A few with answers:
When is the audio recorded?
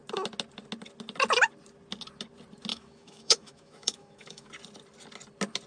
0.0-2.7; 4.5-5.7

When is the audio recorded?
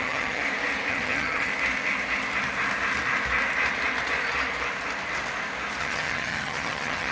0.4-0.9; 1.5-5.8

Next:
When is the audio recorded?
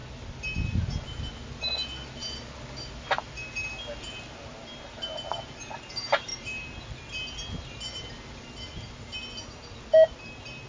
0.0-10.7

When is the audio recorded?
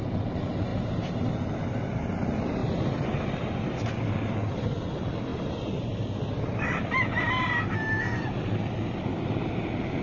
0.0-0.7; 1.3-2.6; 3.9-5.3; 6.4-10.0